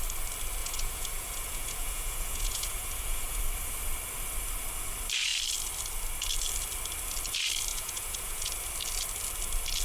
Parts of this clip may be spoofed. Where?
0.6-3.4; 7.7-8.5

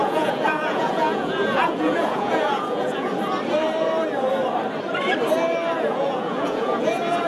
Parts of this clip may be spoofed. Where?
0.0-3.1; 5.8-7.3

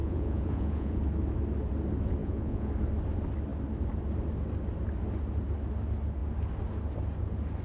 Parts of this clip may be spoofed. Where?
0.0-1.0; 2.2-2.7

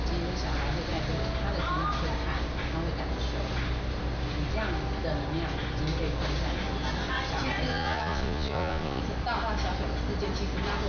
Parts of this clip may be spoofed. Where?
7.7-9.0

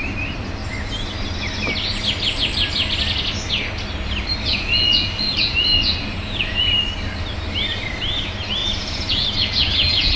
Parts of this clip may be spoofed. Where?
4.5-6.7; 8.6-10.2

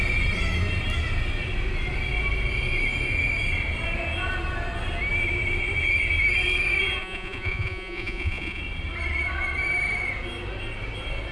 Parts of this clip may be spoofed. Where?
7.0-8.6